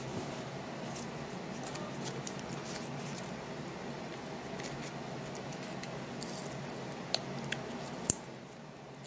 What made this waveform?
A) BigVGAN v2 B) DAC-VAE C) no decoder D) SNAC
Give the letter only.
C